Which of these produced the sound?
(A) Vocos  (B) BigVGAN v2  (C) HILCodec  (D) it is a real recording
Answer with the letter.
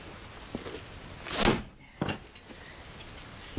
D